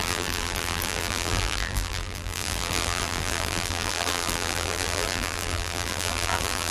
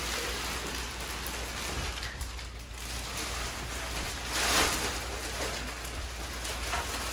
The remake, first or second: first